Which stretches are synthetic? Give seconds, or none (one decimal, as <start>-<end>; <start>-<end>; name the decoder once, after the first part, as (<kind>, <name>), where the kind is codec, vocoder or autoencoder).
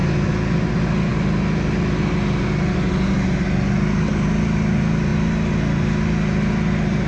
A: none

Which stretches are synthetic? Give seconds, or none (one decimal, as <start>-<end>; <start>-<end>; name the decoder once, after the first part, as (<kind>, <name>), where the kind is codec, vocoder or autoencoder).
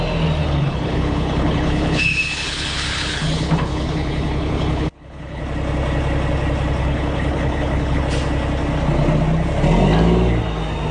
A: 0.4-5.4 (codec, HILCodec); 6.8-8.0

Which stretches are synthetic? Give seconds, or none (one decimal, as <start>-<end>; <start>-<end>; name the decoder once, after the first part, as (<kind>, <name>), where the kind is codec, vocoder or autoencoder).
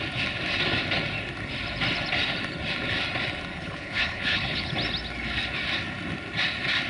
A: 3.5-4.7 (codec, HILCodec)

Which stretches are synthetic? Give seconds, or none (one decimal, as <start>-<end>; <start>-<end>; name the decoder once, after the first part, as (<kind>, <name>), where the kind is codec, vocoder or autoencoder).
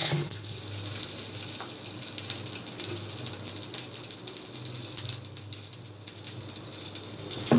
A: 0.0-0.6 (codec, HILCodec)